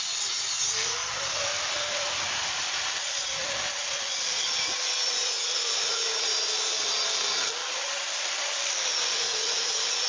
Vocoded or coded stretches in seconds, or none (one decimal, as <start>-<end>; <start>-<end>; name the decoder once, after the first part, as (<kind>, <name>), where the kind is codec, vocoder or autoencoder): none